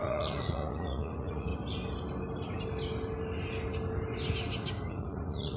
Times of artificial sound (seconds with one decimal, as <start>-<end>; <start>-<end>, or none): 0.0-1.5; 4.9-5.6